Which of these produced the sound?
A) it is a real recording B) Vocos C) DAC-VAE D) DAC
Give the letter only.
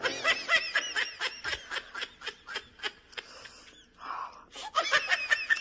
A